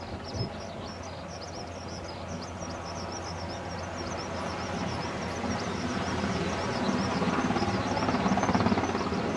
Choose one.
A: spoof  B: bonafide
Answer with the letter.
B